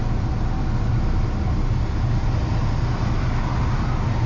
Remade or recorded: recorded